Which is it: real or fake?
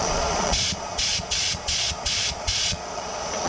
fake